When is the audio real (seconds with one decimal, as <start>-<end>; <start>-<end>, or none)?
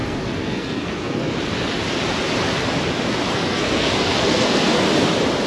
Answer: 1.4-3.3; 4.8-5.5